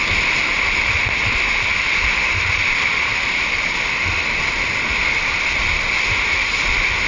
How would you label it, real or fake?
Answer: real